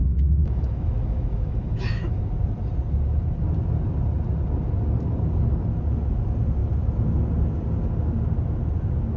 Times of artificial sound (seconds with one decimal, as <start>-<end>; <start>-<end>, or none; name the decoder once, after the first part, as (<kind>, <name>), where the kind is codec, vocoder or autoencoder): 0.0-2.2 (autoencoder, DAC-VAE)